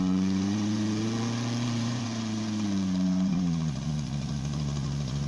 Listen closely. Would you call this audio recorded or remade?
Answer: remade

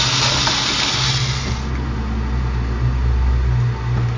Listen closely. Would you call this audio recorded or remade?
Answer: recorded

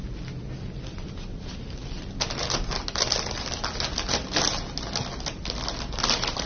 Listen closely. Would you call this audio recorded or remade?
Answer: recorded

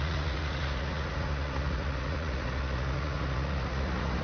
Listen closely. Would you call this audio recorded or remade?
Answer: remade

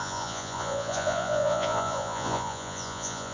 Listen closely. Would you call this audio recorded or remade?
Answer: remade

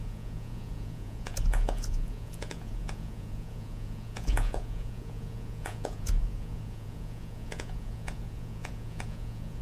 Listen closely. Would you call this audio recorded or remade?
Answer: remade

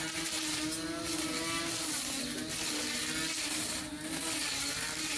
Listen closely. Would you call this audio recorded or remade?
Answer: recorded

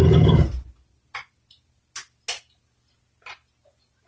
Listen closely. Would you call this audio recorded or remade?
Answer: recorded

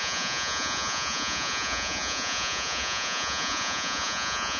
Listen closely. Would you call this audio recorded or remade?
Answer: remade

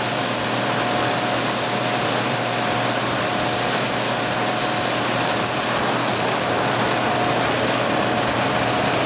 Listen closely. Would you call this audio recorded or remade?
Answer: recorded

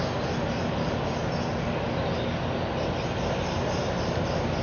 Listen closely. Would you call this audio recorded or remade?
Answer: recorded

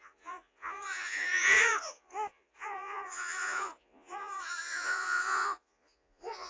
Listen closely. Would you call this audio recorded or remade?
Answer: remade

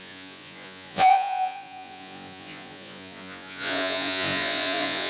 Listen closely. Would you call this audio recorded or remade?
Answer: remade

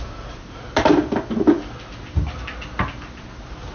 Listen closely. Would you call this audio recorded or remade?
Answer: recorded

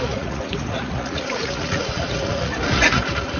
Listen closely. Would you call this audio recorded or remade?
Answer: remade